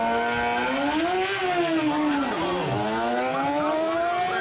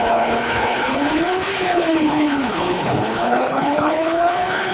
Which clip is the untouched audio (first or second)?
first